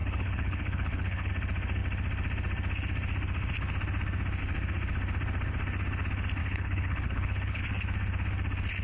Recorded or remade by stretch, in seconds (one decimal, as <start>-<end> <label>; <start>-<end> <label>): 0.0-1.3 remade; 1.3-6.4 recorded; 6.4-7.6 remade; 7.6-8.8 recorded

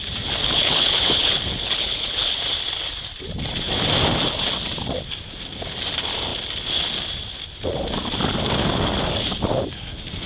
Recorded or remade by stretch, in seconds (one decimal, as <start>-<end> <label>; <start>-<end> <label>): 0.0-0.4 recorded; 0.4-2.4 remade; 2.4-10.3 recorded

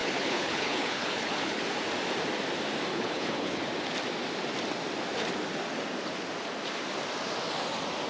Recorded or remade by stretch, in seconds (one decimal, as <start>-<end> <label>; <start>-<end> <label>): 0.0-1.6 remade; 1.6-2.9 recorded; 2.9-3.6 remade; 3.6-8.1 recorded

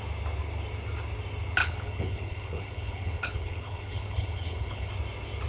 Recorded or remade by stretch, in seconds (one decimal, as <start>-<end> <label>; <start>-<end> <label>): 0.0-1.6 recorded; 1.6-4.9 remade; 4.9-5.5 recorded

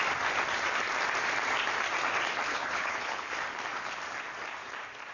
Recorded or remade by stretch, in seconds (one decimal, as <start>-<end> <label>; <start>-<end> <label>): 0.0-2.5 recorded; 2.5-3.3 remade; 3.3-5.1 recorded

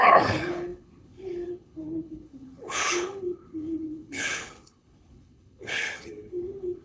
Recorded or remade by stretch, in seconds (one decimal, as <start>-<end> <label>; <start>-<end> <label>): 0.0-6.8 remade

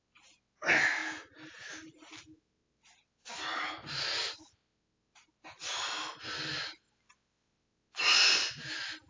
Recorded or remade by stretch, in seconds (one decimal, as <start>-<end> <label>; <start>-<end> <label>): 0.0-9.1 recorded